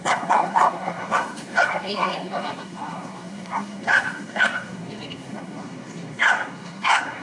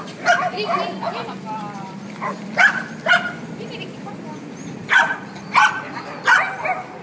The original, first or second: second